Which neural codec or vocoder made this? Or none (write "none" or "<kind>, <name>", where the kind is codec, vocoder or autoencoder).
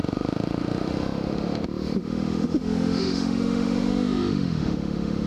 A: autoencoder, DAC-VAE